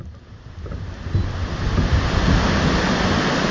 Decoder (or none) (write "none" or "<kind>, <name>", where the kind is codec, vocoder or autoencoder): none